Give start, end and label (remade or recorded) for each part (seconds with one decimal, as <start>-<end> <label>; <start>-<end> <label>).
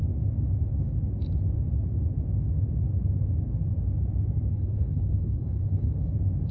0.0-4.5 recorded; 4.5-6.1 remade; 6.1-6.5 recorded